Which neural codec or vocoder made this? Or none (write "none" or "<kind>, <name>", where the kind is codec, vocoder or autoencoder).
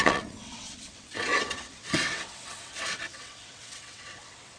vocoder, WaveNeXt